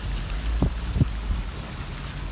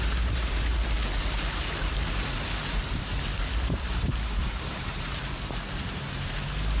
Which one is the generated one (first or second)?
second